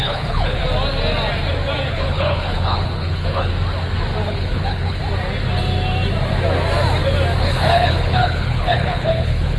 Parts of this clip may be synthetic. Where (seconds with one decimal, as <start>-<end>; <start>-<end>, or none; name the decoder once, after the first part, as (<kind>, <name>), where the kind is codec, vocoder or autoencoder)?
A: 0.0-0.6 (codec, HILCodec); 1.9-3.5; 4.3-5.0; 7.4-9.6